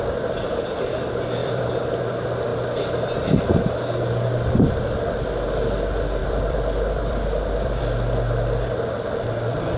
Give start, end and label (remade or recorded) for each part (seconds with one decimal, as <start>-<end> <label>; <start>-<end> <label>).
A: 0.0-1.4 recorded; 1.4-2.0 remade; 2.0-2.5 recorded; 2.5-3.5 remade; 3.5-6.2 recorded; 6.2-7.8 remade; 7.8-9.8 recorded